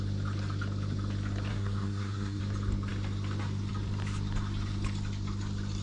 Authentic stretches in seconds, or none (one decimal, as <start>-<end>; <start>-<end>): 0.0-1.5; 2.4-5.8